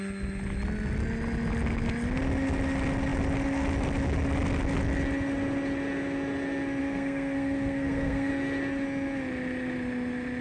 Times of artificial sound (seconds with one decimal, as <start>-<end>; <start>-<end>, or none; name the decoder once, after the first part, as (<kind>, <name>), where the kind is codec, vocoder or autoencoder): 6.8-8.3 (codec, SNAC)

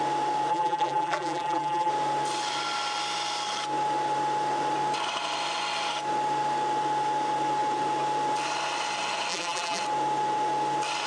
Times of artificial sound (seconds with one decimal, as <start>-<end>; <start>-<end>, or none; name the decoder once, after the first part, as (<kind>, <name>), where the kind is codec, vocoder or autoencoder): 0.5-1.9 (vocoder, BigVGAN v2); 9.3-9.8

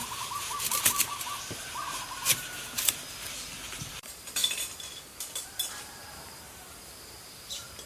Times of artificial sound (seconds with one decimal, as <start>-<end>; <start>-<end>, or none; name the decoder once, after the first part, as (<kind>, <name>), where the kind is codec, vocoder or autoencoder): 0.0-4.4 (vocoder, BigVGAN v2); 5.8-7.9

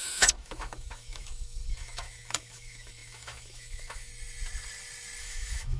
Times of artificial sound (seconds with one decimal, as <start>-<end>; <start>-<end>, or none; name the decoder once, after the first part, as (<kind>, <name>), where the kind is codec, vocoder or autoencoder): 0.0-4.1 (autoencoder, DAC-VAE); 5.2-5.8

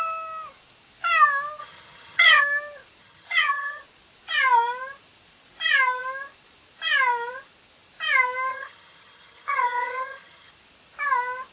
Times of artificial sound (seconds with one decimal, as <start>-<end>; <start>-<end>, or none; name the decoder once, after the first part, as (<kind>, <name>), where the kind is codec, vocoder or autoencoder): 1.6-2.4 (vocoder, HiFi-GAN); 3.0-3.8; 8.5-10.5

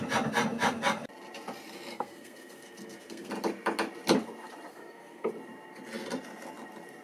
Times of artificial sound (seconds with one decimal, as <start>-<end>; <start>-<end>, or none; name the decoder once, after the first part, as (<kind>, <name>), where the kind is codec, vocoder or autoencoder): 1.9-3.3 (codec, SNAC); 4.7-5.3

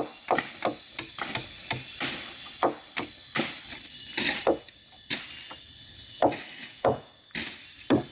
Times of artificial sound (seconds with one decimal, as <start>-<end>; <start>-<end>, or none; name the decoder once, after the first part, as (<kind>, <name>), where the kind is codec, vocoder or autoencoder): 6.6-7.1 (vocoder, Vocos)